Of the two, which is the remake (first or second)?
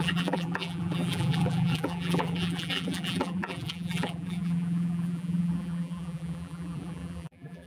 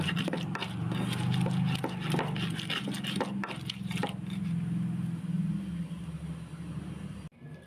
first